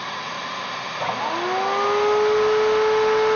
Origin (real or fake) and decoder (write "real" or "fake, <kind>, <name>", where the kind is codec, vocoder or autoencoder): real